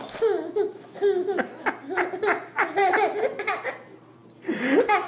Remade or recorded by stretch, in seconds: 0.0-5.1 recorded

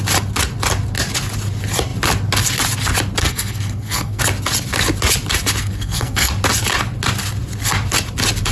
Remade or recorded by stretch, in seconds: 0.0-3.2 recorded; 3.2-4.2 remade; 4.2-5.6 recorded; 5.6-6.3 remade; 6.3-8.5 recorded

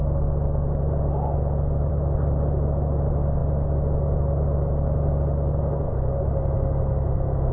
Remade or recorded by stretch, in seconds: 0.0-7.5 recorded

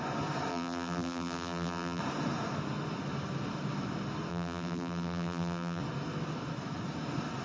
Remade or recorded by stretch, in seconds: 0.0-0.5 recorded; 0.5-2.0 remade; 2.0-4.3 recorded; 4.3-5.8 remade; 5.8-7.4 recorded

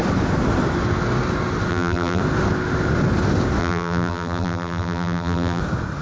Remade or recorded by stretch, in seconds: 0.0-1.7 recorded; 1.7-2.2 remade; 2.2-3.6 recorded; 3.6-5.6 remade; 5.6-6.0 recorded

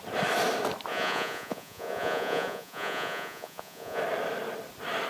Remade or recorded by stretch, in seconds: 0.0-0.9 recorded; 0.9-4.0 remade; 4.0-5.1 recorded